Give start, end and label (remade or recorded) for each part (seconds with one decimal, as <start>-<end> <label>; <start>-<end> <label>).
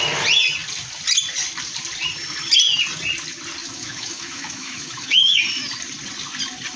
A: 0.0-3.6 recorded; 3.6-5.4 remade; 5.4-6.8 recorded